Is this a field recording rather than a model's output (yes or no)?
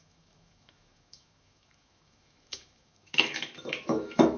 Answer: no